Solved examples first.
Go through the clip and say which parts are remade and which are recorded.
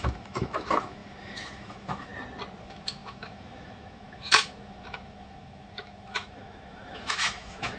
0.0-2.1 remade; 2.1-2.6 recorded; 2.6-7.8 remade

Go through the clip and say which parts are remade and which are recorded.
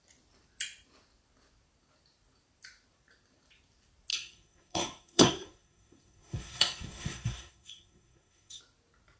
0.0-4.1 recorded; 4.1-8.6 remade; 8.6-9.2 recorded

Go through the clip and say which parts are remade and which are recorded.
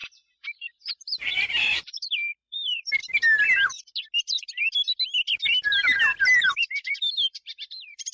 0.0-3.0 remade; 3.0-6.5 recorded; 6.5-8.1 remade